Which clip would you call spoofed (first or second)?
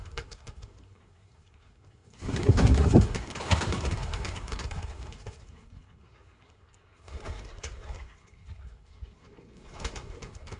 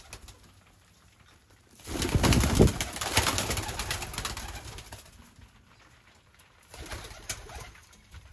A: first